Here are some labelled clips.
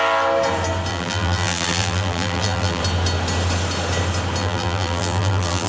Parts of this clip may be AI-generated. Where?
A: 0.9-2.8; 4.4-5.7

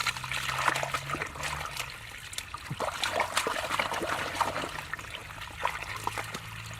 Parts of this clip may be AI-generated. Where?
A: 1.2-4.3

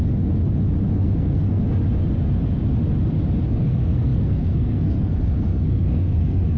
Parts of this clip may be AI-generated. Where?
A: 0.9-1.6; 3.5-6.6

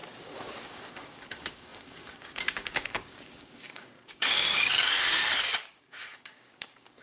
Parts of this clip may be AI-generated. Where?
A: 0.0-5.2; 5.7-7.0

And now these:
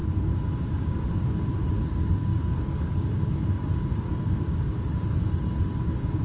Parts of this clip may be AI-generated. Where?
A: 0.0-6.2

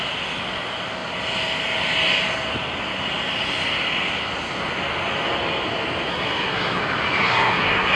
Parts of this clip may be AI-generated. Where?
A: 6.1-6.8; 7.2-8.0

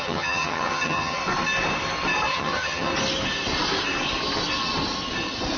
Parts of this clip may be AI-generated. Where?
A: 0.0-1.2; 2.3-2.9

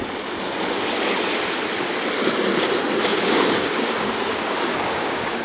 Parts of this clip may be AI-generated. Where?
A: 3.1-5.4